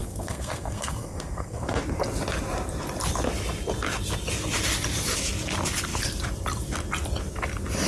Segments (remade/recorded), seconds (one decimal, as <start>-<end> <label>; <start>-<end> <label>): 0.0-1.8 remade; 1.8-7.9 recorded